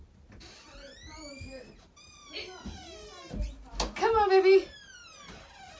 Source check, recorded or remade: recorded